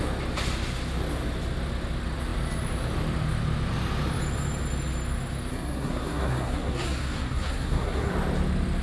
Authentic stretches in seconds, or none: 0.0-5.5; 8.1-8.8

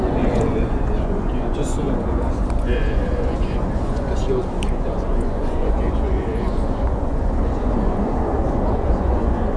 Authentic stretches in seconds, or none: 4.2-4.7

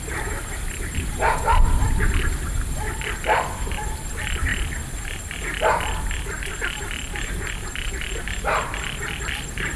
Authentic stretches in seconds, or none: 4.5-8.9

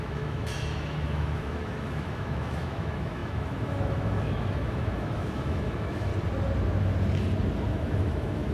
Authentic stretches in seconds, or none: 6.1-7.7

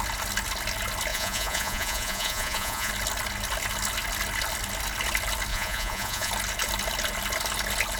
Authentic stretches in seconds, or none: 0.0-1.1; 2.9-5.5; 6.3-8.0

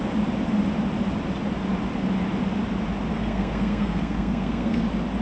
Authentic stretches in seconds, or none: 0.0-3.1; 4.8-5.2

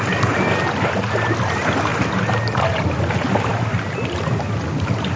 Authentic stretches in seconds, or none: 0.0-5.2